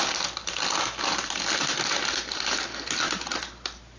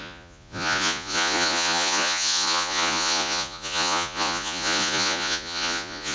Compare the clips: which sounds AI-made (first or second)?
second